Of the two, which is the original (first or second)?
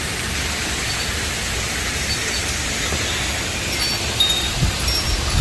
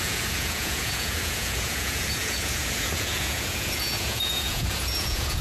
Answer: first